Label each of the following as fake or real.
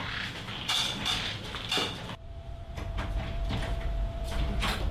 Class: fake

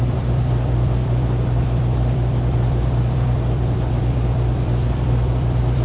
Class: fake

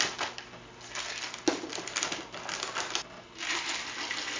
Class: real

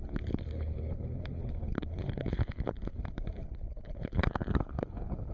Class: fake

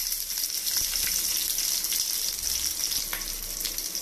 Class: real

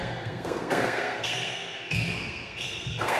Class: fake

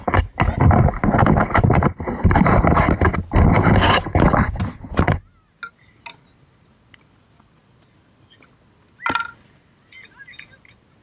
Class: real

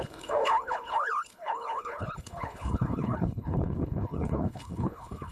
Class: fake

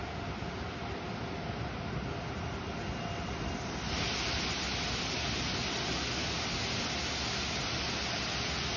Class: real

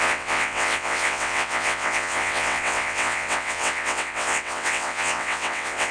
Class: fake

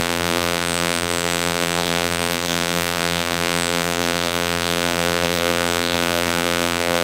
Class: fake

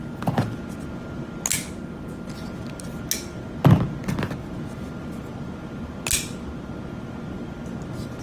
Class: real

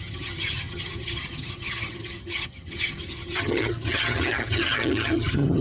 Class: fake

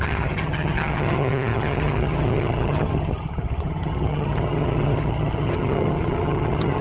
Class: fake